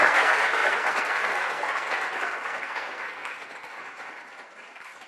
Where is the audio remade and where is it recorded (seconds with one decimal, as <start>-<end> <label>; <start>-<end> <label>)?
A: 0.0-5.1 remade

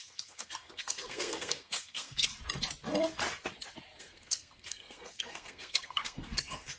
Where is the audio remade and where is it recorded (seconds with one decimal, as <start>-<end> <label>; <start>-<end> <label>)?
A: 0.0-2.3 remade; 2.3-4.0 recorded; 4.0-6.8 remade

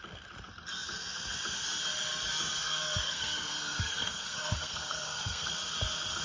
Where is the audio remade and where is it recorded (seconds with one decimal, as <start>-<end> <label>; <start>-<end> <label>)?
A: 0.0-2.6 recorded; 2.6-5.5 remade; 5.5-6.2 recorded

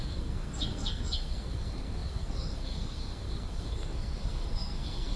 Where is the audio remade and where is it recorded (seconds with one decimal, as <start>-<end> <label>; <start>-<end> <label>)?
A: 0.0-5.2 remade